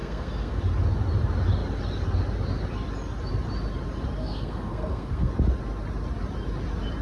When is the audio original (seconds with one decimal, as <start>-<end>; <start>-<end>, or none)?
0.6-4.2; 5.3-7.0